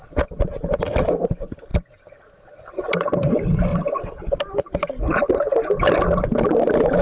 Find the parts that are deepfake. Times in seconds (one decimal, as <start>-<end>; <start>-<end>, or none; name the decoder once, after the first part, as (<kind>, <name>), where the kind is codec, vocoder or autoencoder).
0.0-1.2 (vocoder, BigVGAN v2); 1.7-2.9; 3.7-4.6